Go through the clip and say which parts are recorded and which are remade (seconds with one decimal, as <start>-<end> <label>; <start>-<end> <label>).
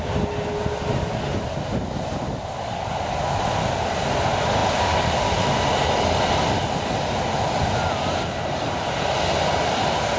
0.0-10.2 recorded